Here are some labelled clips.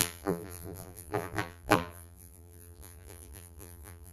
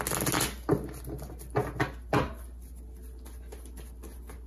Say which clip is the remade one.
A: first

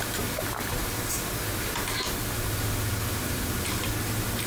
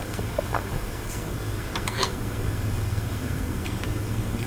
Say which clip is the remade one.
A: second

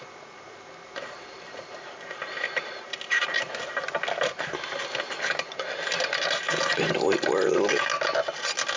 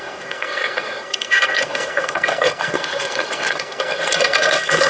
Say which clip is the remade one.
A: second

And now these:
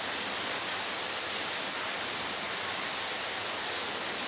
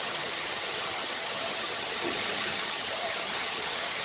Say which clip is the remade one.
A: second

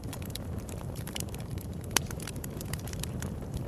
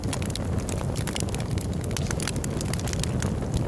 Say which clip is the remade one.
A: first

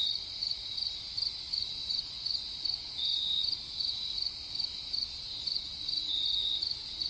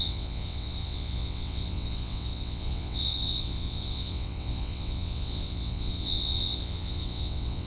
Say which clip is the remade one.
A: second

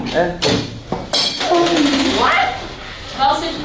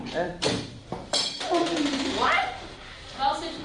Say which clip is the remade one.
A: second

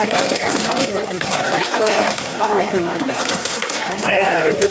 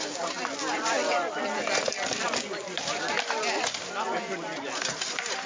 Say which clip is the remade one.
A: first